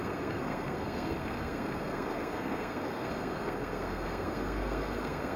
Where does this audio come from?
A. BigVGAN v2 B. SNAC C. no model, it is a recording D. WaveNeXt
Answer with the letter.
B